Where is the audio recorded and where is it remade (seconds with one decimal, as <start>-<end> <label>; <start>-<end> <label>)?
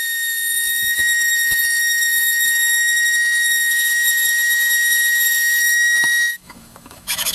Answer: 0.0-3.7 remade; 3.7-5.6 recorded; 5.6-7.3 remade